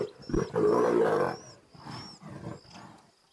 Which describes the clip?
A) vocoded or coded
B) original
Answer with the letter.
B